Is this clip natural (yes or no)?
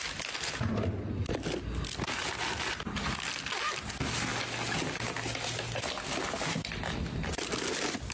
yes